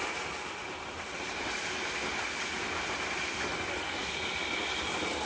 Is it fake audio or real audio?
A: real